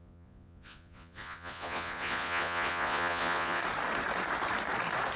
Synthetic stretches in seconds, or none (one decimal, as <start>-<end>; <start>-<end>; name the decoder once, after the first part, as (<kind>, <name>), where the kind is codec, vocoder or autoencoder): 0.0-3.6 (vocoder, Vocos)